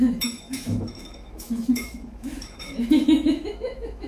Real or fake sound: fake